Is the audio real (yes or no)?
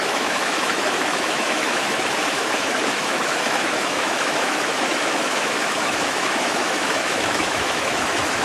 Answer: no